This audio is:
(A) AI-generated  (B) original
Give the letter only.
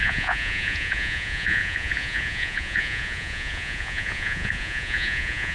A